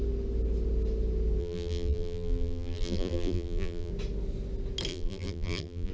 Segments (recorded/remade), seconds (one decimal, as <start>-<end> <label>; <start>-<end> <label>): 0.0-1.4 recorded; 1.4-3.9 remade; 3.9-4.9 recorded; 4.9-5.9 remade